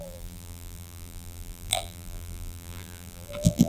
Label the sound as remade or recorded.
remade